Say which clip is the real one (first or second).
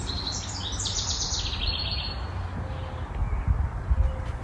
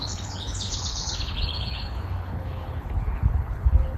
first